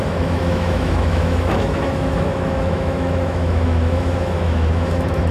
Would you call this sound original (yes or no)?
no